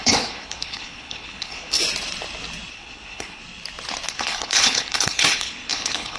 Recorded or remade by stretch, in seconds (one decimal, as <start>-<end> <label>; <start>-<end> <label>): 0.0-1.8 remade; 1.8-2.7 recorded; 2.7-3.4 remade; 3.4-4.1 recorded; 4.1-6.2 remade